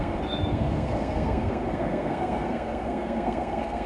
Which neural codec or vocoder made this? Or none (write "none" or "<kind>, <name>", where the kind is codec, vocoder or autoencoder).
codec, SNAC